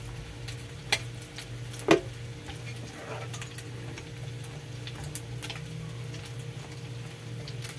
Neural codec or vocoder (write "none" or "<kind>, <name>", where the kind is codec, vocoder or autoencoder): none